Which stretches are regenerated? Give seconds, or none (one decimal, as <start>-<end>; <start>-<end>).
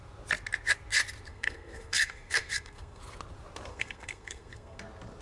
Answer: 1.3-3.0; 3.7-4.8